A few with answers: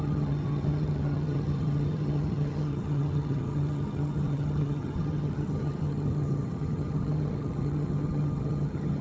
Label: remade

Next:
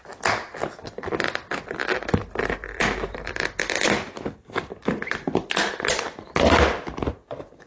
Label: recorded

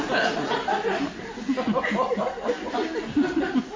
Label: recorded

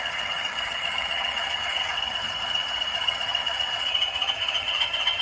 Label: remade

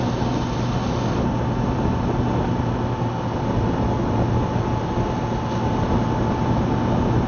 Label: recorded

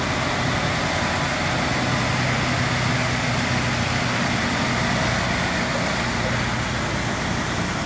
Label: recorded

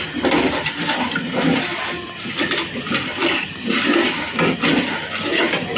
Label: recorded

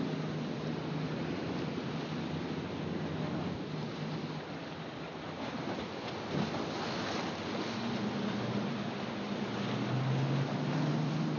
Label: recorded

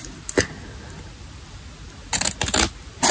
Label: recorded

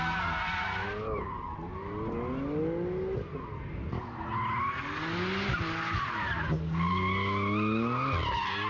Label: recorded